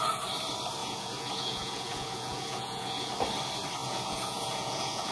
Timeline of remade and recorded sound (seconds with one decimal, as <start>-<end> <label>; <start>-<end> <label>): 0.0-0.8 recorded; 0.8-3.1 remade; 3.1-3.8 recorded; 3.8-5.1 remade